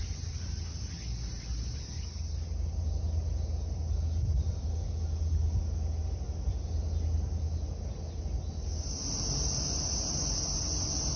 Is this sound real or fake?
real